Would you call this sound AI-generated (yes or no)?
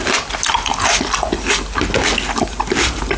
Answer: no